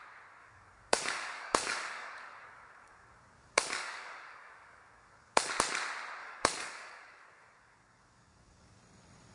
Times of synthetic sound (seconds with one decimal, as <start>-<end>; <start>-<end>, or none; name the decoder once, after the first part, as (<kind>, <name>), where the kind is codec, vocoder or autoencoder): 0.4-5.5 (codec, DAC); 6.2-8.8